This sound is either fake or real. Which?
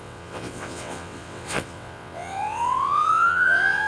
fake